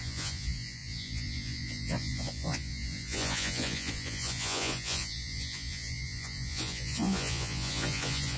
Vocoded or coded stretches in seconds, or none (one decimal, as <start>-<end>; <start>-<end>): 0.0-8.4